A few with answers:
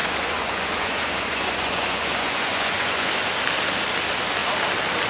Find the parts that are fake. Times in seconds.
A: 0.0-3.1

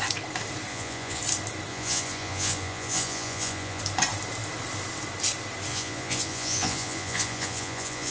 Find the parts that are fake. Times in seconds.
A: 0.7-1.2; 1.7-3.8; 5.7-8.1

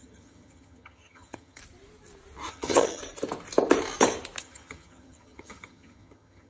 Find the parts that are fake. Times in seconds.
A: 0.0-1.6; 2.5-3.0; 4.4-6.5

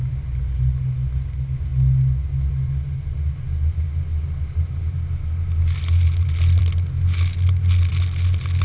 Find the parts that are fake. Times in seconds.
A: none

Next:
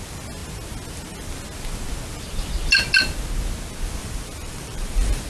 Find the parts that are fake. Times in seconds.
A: 4.0-5.3

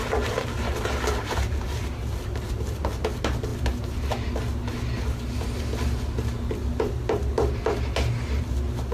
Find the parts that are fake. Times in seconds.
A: none

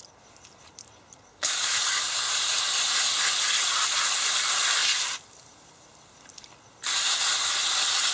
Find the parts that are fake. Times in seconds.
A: 1.3-2.1

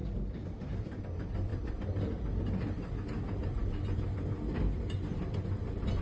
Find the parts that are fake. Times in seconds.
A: 0.0-1.0